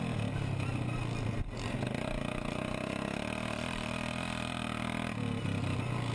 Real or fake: real